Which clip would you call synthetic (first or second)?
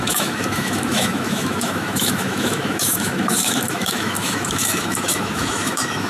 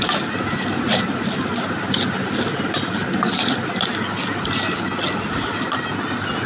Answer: first